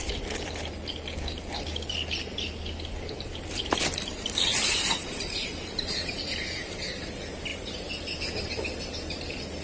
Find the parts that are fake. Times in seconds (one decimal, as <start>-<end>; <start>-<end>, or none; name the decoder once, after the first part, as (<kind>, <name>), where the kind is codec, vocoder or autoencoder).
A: 4.5-7.0 (vocoder, BigVGAN v2)